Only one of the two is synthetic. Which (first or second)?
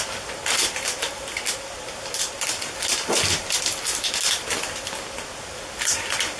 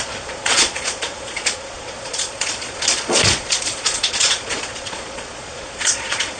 second